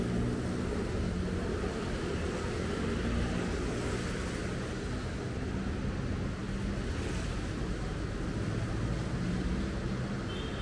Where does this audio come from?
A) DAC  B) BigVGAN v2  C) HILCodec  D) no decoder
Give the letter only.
D